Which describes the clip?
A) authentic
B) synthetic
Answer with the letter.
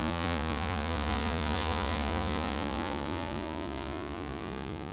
B